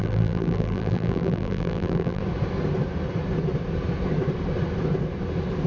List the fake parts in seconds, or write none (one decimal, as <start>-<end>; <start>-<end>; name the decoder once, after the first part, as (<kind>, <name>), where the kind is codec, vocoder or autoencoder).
0.0-2.2 (vocoder, BigVGAN v2)